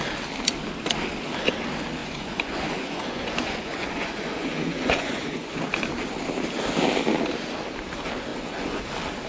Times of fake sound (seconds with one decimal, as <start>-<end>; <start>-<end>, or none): 2.0-5.6; 8.3-8.8